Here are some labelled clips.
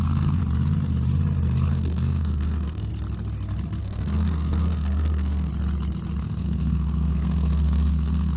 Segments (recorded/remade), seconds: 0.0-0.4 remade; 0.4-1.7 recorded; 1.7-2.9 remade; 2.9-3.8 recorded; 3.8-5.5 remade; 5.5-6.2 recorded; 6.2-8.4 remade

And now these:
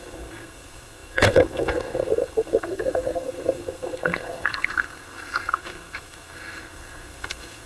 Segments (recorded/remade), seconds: 0.0-7.7 remade